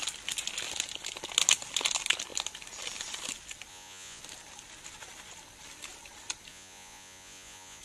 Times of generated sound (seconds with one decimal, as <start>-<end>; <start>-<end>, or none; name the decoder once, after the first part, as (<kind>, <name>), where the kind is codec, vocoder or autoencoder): 3.7-4.2 (vocoder, Vocos); 6.5-7.8